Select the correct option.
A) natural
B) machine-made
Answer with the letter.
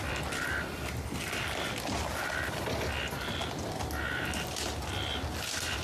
A